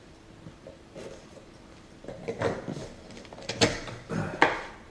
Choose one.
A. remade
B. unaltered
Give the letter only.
A